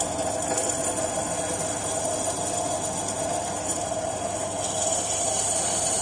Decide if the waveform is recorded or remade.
recorded